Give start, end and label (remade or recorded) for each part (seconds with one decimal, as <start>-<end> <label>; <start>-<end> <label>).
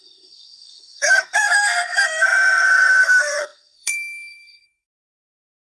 0.0-5.7 remade